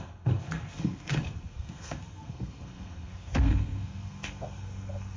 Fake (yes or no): yes